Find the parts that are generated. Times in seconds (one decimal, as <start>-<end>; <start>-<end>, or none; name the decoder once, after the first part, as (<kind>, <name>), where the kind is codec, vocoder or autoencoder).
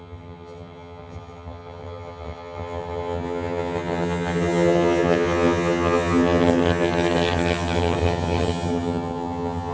0.0-9.7 (vocoder, HiFi-GAN)